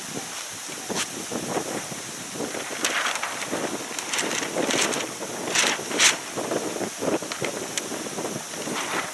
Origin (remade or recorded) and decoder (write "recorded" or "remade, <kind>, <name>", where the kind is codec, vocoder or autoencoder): recorded